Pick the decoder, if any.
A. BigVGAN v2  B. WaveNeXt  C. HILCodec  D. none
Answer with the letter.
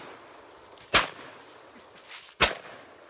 D